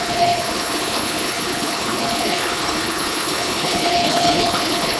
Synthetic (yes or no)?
yes